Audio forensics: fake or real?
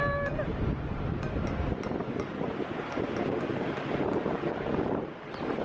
real